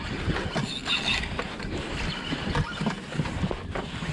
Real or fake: fake